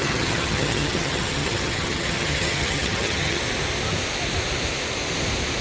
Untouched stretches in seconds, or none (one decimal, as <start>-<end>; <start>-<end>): 3.4-5.6